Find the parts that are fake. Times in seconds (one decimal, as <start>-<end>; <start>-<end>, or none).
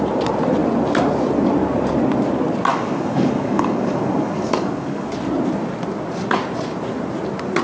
2.7-5.1